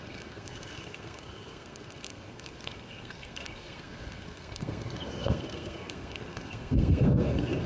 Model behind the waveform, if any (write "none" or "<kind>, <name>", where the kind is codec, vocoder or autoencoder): codec, SNAC